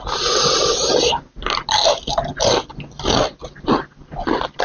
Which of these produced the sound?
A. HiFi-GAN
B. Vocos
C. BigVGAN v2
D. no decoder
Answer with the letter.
D